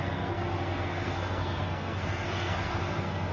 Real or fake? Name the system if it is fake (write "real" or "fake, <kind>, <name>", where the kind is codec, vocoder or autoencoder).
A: fake, codec, SNAC